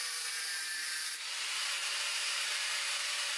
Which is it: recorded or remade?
remade